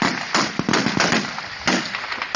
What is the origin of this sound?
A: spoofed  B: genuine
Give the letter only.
B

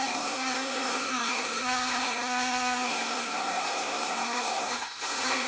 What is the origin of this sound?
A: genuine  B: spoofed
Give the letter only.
B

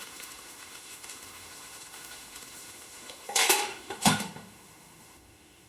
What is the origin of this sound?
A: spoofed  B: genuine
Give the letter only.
A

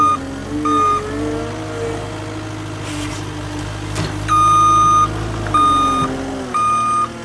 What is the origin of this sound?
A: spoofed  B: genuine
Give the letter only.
B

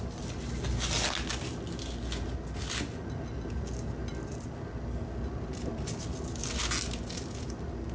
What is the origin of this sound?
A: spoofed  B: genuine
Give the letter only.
B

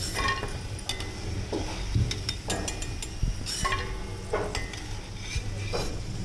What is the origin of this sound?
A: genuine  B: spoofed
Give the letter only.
A